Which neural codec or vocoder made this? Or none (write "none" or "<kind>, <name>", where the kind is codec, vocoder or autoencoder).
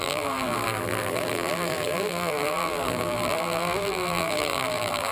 vocoder, BigVGAN v2